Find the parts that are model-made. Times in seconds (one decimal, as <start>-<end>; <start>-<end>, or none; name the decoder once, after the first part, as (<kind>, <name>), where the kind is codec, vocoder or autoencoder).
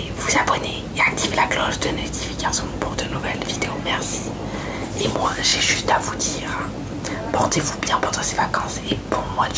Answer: none